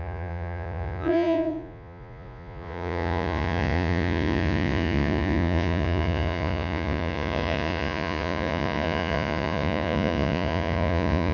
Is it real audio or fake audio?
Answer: fake